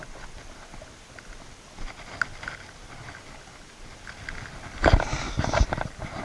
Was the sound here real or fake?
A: real